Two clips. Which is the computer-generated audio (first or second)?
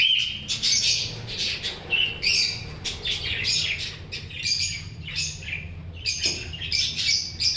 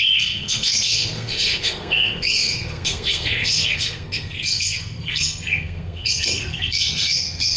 second